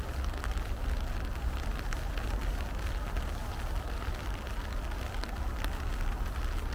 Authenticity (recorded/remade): recorded